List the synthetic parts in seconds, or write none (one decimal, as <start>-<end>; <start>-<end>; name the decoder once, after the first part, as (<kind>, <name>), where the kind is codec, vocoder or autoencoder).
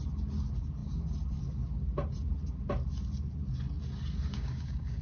4.3-5.0 (codec, DAC)